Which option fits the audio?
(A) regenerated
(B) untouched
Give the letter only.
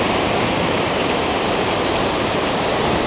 A